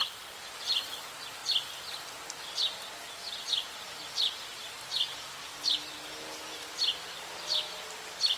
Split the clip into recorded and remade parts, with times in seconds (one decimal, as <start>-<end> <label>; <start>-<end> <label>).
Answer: 0.0-8.4 recorded